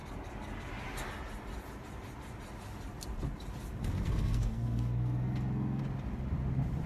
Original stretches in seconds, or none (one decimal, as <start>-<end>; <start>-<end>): 0.0-3.8; 5.8-6.9